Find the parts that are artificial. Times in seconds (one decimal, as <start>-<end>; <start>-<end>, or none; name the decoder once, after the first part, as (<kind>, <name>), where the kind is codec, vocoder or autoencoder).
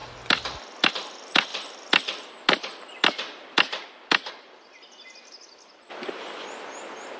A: none